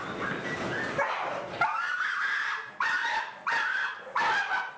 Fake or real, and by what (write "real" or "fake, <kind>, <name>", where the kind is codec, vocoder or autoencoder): real